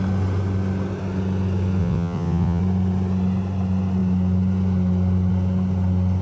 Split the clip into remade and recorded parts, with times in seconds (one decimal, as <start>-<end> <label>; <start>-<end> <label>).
0.0-1.8 recorded; 1.8-2.6 remade; 2.6-6.2 recorded

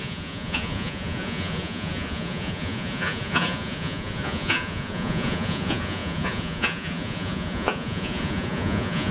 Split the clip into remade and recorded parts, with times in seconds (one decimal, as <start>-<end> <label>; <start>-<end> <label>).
0.0-9.1 remade

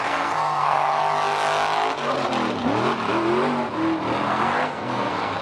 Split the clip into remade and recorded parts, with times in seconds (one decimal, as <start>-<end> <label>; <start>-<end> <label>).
0.0-1.0 remade; 1.0-4.2 recorded; 4.2-5.4 remade

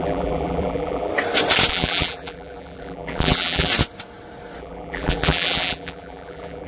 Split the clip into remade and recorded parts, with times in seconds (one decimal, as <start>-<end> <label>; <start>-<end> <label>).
0.0-1.1 remade; 1.1-1.7 recorded; 1.7-3.7 remade; 3.7-4.6 recorded; 4.6-6.7 remade

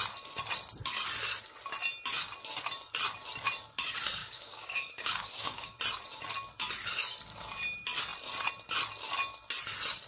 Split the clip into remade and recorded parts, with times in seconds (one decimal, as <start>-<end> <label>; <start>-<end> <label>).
0.0-4.2 recorded; 4.2-5.8 remade; 5.8-10.1 recorded